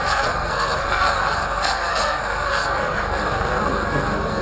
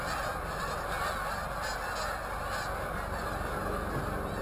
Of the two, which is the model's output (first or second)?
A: first